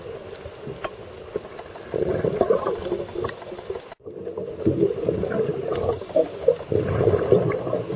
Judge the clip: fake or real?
real